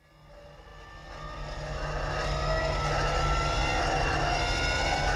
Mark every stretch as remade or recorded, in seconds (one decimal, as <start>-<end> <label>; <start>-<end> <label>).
0.0-5.2 recorded